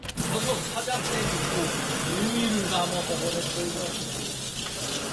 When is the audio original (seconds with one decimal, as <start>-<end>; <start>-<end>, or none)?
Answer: 0.0-5.1